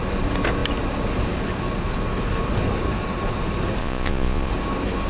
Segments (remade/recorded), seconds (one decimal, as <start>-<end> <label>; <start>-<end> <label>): 0.0-3.8 recorded; 3.8-4.5 remade; 4.5-5.1 recorded